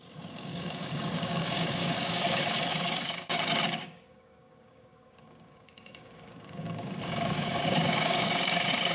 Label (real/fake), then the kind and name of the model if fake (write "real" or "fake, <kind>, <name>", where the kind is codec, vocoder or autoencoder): fake, codec, DAC